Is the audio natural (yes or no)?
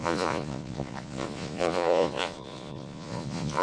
no